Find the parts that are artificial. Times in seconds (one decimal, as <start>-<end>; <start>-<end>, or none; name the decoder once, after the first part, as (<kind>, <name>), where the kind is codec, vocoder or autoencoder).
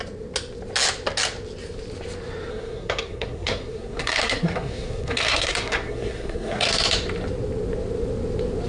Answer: 2.5-6.7 (codec, SNAC)